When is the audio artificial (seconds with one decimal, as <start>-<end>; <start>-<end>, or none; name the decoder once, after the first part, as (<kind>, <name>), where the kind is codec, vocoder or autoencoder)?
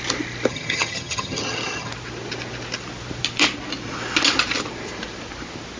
0.5-1.9 (vocoder, HiFi-GAN)